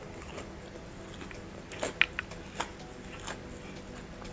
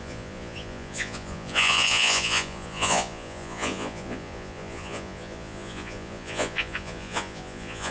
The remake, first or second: second